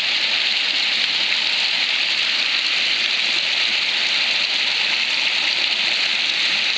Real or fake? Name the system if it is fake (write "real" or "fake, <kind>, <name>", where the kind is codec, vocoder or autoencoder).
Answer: real